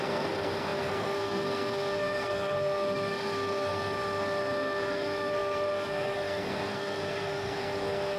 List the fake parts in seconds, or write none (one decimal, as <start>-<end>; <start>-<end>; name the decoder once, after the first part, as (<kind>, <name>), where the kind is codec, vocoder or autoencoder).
0.0-8.2 (codec, SNAC)